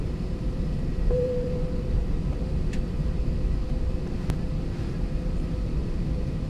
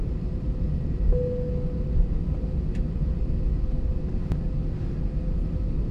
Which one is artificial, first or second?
first